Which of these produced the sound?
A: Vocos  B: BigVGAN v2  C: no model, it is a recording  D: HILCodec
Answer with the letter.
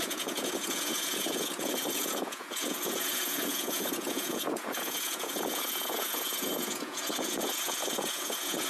A